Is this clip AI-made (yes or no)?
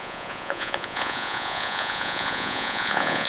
yes